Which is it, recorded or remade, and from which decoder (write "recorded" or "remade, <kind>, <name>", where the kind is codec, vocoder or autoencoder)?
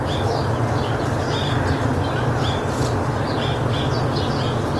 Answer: recorded